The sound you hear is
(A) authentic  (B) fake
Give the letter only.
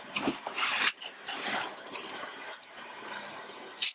A